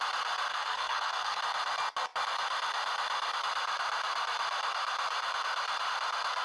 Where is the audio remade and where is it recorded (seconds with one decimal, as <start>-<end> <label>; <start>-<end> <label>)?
0.0-0.5 recorded; 0.5-1.4 remade; 1.4-6.4 recorded